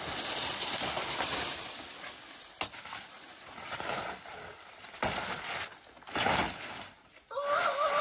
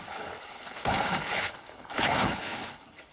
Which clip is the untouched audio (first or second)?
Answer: first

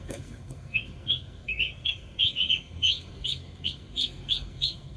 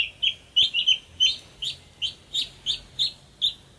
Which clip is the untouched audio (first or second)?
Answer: second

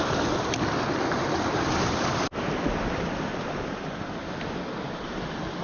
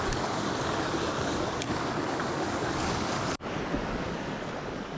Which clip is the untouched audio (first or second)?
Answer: first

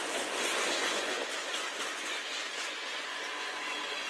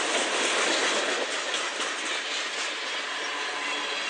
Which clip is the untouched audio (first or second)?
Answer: second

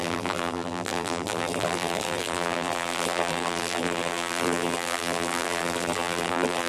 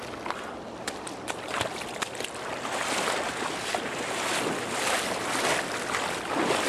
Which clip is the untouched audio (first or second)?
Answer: second